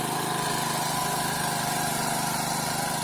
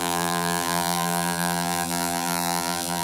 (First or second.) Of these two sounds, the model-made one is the second